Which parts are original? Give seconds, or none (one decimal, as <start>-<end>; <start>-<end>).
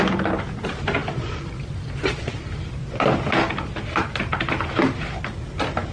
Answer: 0.0-5.9